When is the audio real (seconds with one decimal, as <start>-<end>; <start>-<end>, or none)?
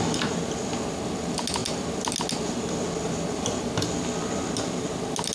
0.0-5.3